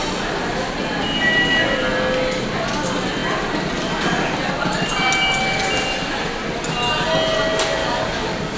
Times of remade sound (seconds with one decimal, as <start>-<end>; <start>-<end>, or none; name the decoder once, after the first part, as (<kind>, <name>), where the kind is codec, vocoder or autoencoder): 7.8-8.6 (codec, DAC)